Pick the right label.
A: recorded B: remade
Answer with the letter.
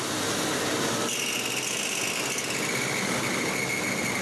A